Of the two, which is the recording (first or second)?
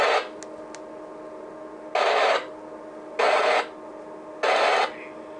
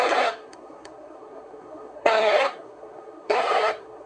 first